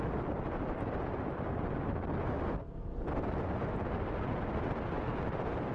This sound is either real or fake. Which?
real